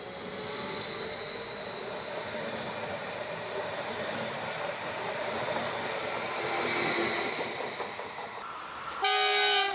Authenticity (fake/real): real